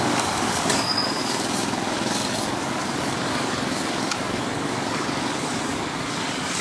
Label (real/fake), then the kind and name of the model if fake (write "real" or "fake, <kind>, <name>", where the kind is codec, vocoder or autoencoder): fake, codec, DAC